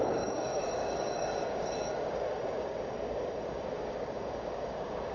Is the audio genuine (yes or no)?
no